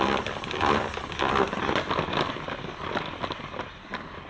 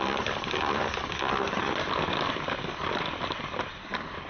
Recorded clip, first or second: first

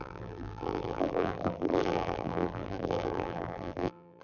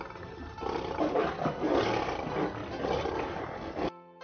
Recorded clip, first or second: second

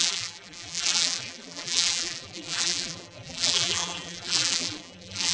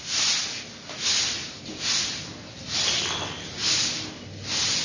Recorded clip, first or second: second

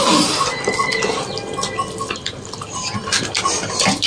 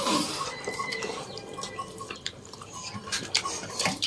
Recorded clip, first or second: first